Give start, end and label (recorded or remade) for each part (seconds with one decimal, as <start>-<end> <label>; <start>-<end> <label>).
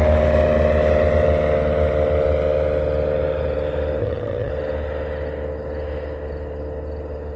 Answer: 0.0-4.0 recorded; 4.0-4.5 remade; 4.5-7.4 recorded